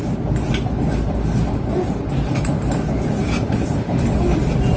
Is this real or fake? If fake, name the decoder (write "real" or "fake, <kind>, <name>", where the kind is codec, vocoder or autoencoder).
real